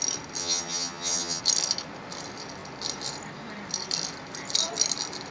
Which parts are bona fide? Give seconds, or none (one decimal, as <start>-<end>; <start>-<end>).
0.0-0.4; 1.4-5.3